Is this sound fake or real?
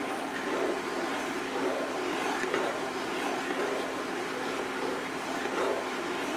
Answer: fake